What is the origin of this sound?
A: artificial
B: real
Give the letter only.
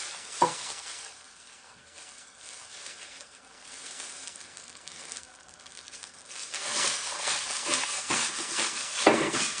A